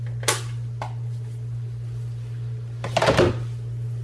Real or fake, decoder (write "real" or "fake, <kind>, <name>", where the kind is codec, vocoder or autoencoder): real